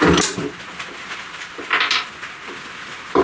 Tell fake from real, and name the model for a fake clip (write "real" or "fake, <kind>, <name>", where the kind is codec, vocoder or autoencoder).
real